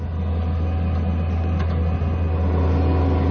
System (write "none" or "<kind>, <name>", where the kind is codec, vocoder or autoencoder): none